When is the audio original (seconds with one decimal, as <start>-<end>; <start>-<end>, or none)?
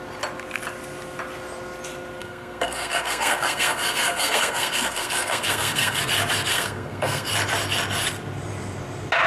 0.0-2.2; 6.0-6.5; 7.3-9.3